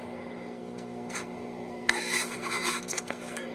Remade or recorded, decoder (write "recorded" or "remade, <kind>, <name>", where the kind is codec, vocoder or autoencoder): remade, codec, SNAC